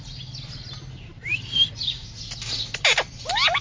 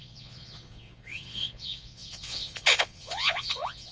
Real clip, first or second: first